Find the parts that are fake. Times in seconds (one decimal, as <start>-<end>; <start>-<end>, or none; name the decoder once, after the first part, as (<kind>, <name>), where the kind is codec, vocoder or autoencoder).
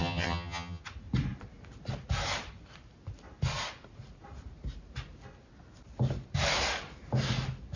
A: 0.0-0.8 (vocoder, HiFi-GAN)